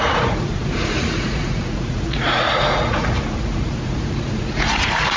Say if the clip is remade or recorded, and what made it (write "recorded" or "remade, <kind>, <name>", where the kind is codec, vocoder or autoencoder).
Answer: remade, vocoder, Vocos